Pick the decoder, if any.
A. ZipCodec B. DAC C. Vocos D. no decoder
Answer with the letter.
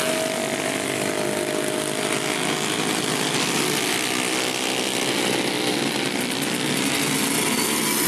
D